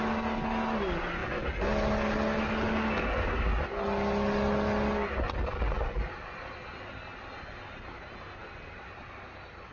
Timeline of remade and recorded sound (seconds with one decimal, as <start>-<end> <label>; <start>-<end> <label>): 0.0-9.7 recorded